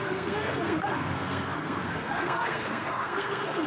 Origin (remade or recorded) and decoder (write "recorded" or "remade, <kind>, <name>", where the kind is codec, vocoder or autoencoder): remade, codec, SNAC